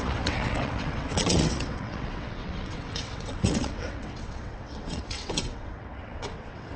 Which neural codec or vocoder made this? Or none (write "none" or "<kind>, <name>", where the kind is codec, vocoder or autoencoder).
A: vocoder, WaveNeXt